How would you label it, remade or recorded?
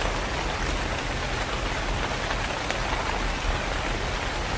recorded